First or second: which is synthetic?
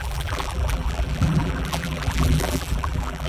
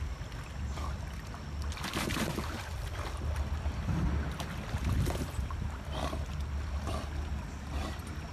first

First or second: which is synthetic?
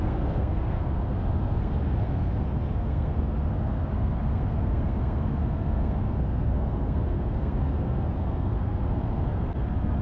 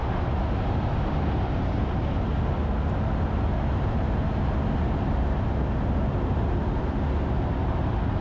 first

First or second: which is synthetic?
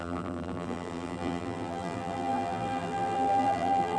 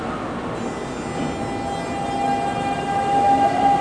first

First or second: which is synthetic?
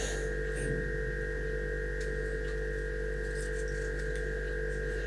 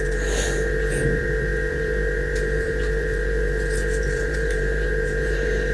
second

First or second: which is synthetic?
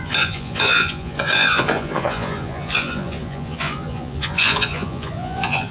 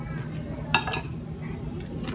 first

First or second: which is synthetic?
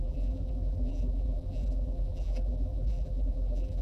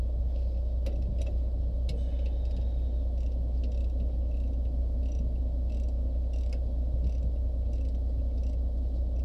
first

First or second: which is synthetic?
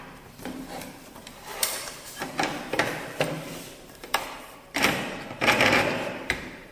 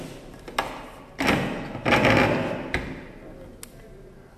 first